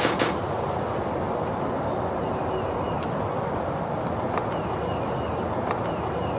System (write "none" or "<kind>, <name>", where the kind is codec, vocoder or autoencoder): none